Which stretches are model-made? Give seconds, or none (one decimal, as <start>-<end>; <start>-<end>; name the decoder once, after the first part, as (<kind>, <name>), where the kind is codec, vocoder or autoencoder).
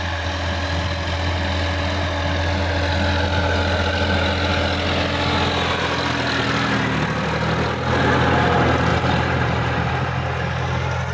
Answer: 8.9-9.9 (vocoder, BigVGAN v2)